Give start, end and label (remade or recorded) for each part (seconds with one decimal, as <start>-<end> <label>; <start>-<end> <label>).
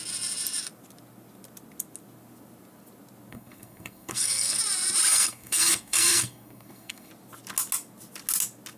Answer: 0.0-3.3 recorded; 3.3-4.6 remade; 4.6-5.1 recorded; 5.1-7.1 remade; 7.1-8.8 recorded